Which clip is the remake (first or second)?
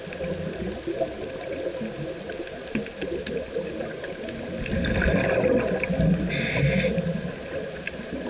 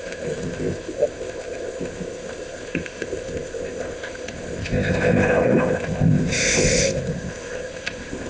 second